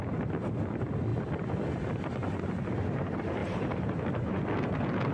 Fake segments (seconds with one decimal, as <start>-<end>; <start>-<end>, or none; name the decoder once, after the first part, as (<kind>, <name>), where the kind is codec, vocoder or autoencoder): 3.4-4.4 (vocoder, BigVGAN v2)